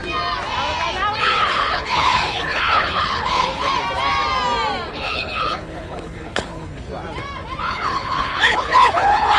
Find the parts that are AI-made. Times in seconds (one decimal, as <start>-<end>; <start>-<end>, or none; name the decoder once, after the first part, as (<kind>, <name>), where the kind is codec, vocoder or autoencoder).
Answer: 1.2-3.7 (codec, HILCodec); 4.9-6.9; 7.6-9.4